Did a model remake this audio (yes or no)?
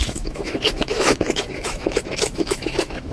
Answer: yes